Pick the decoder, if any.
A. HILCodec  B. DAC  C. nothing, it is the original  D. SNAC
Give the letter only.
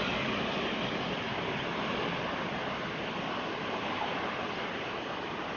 C